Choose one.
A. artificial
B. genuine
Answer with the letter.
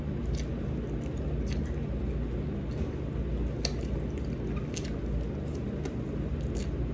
B